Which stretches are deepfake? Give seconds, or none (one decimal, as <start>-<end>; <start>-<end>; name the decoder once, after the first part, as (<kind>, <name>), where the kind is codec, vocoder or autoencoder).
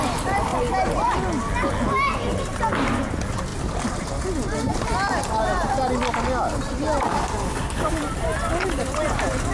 7.1-8.0 (codec, DAC)